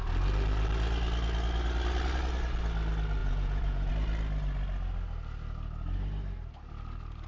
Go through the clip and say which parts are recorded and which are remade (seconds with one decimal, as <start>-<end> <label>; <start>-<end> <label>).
0.0-3.2 recorded; 3.2-3.9 remade; 3.9-7.3 recorded